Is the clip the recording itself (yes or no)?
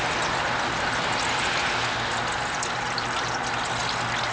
yes